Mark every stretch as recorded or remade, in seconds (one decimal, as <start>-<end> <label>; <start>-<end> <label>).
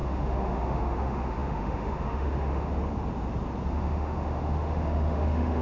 0.0-2.7 remade; 2.7-3.7 recorded; 3.7-5.6 remade